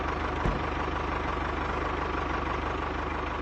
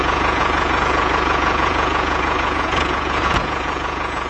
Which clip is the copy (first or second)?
second